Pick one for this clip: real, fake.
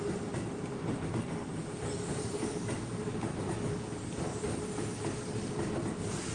real